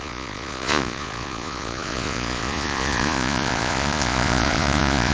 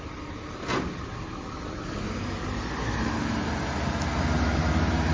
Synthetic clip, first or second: first